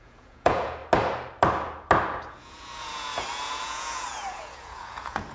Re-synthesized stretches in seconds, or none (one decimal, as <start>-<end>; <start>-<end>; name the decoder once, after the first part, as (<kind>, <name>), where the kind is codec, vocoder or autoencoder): 0.0-0.8 (vocoder, Vocos); 2.3-5.3